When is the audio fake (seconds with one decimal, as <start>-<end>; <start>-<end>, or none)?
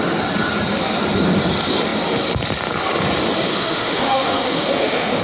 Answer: 3.5-5.2